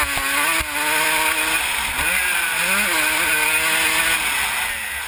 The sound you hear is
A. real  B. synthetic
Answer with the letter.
A